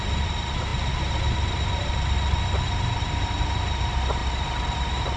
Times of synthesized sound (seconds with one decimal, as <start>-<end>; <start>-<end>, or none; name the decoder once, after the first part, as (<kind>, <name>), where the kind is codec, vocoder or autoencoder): none